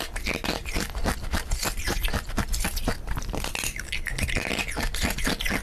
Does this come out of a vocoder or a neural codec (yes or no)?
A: no